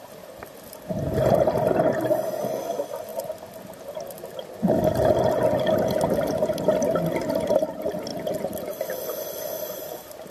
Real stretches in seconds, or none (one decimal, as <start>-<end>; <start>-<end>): 0.0-10.3